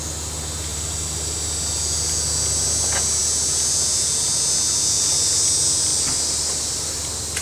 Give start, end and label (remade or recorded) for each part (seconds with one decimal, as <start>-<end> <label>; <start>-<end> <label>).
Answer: 0.0-0.7 recorded; 0.7-1.3 remade; 1.3-7.4 recorded